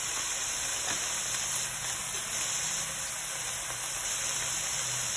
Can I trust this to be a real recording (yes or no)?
yes